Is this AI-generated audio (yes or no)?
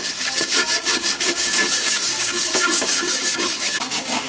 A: yes